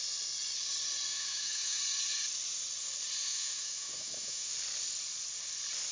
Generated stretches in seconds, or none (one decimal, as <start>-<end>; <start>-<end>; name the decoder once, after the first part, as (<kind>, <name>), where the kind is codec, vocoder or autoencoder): 1.1-1.8 (autoencoder, DAC-VAE); 3.2-4.5